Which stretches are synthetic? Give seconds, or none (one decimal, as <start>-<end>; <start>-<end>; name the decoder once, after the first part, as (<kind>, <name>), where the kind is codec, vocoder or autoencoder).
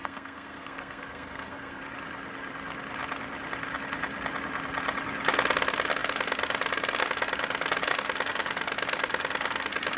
0.0-1.8 (codec, SNAC)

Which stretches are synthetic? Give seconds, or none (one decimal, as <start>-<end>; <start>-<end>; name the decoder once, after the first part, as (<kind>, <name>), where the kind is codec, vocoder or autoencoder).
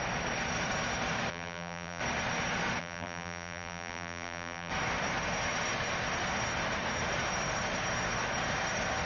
1.3-2.0 (vocoder, BigVGAN v2); 2.8-4.7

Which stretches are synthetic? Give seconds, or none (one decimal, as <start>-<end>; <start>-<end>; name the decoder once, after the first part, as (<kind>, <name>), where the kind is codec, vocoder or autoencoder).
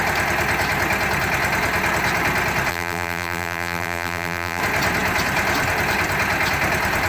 2.7-4.6 (vocoder, BigVGAN v2)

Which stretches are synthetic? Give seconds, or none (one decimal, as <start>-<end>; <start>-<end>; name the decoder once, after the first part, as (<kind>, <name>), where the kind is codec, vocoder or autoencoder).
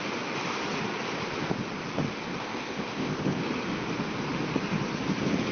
2.4-3.4 (codec, ZipCodec)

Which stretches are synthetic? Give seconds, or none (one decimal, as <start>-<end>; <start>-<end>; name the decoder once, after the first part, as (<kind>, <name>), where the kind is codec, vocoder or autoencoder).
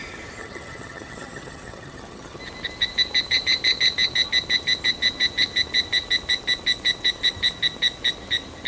0.4-2.4 (vocoder, HiFi-GAN)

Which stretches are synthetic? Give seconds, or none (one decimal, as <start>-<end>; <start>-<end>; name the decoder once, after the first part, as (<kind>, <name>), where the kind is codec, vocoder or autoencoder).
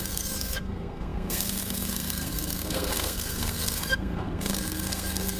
0.0-5.4 (codec, SNAC)